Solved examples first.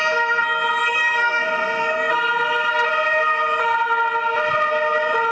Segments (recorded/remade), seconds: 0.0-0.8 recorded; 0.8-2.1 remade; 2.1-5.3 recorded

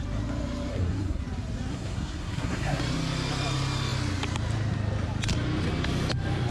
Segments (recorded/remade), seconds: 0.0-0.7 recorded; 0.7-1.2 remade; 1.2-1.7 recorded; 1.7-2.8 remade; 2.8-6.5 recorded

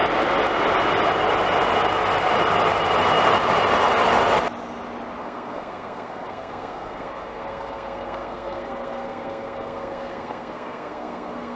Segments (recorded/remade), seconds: 0.0-5.2 recorded; 5.2-11.6 remade